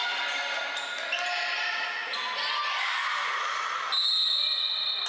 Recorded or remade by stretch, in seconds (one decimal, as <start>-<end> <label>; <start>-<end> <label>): 0.0-5.1 recorded